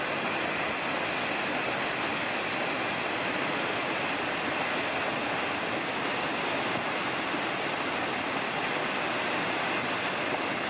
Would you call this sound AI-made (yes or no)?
no